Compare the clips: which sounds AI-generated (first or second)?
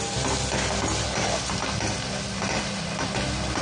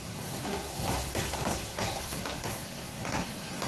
second